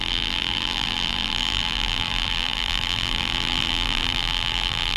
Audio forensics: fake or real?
fake